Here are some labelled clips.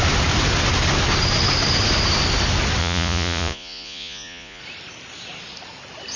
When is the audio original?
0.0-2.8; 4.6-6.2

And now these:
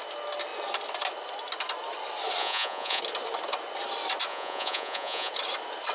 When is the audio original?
0.0-2.4; 3.0-4.3; 5.3-5.9

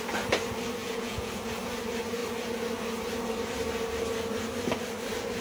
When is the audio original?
0.0-0.8; 1.3-5.4

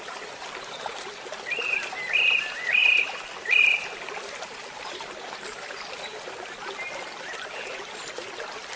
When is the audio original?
0.0-8.8

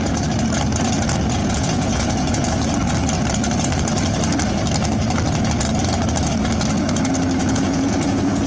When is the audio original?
0.0-1.4; 2.6-7.4

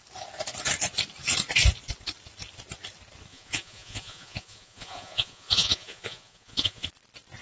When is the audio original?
0.0-3.3; 6.9-7.4

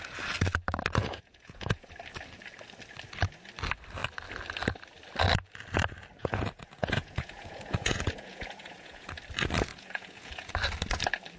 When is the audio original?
0.0-1.0; 1.9-6.2; 9.1-9.7; 10.5-11.4

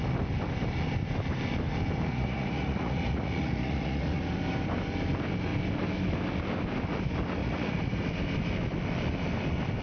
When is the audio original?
0.0-2.1; 4.2-7.4; 8.1-9.8